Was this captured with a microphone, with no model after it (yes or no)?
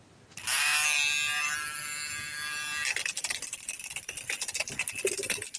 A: yes